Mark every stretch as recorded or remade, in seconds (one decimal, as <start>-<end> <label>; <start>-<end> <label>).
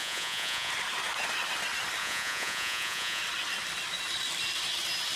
0.0-0.7 remade; 0.7-2.0 recorded; 2.0-3.2 remade; 3.2-5.2 recorded